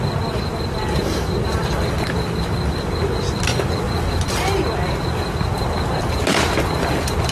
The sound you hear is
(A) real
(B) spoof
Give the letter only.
A